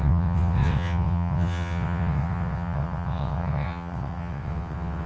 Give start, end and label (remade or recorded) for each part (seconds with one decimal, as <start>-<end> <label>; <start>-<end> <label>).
0.0-5.1 remade